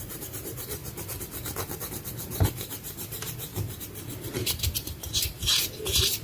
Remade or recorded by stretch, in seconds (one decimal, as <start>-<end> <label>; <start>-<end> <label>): 0.0-0.8 remade; 0.8-2.4 recorded; 2.4-3.5 remade; 3.5-4.3 recorded; 4.3-6.2 remade